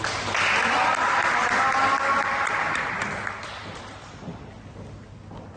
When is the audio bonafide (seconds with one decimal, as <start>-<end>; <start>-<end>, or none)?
0.0-5.6